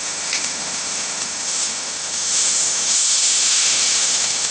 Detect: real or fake fake